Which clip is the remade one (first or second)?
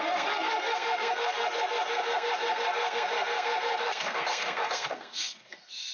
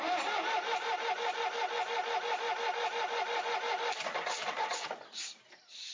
first